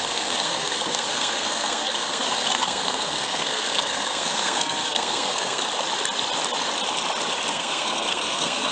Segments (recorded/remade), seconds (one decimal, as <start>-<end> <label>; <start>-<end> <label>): 0.0-5.6 remade; 5.6-7.5 recorded; 7.5-8.7 remade